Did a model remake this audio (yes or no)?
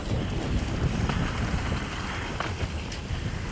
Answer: no